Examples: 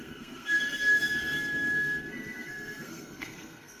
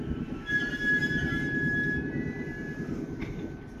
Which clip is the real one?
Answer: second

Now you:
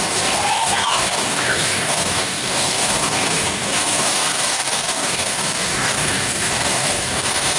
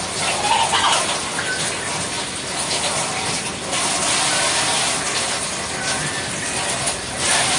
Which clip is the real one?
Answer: second